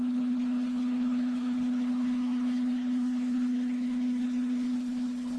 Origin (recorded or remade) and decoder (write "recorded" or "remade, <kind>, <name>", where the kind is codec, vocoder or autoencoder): remade, codec, HILCodec